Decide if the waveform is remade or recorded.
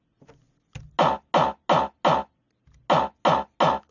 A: recorded